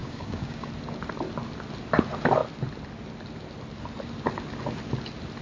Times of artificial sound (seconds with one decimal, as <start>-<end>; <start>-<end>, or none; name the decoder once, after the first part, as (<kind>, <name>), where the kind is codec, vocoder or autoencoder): 0.0-0.7 (codec, DAC)